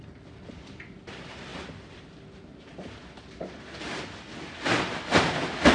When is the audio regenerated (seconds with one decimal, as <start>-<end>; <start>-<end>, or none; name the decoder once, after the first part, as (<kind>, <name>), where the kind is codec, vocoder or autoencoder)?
0.0-1.5 (vocoder, BigVGAN v2); 2.2-5.7